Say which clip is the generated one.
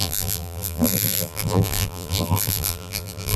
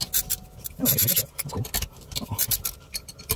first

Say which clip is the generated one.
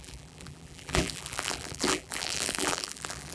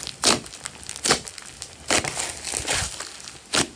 first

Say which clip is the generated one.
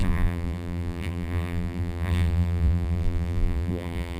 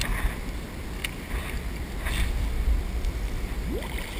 first